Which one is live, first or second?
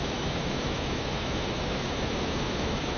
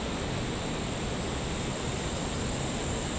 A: second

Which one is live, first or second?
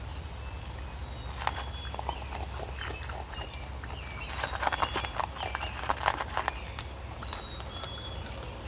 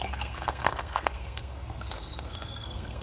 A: first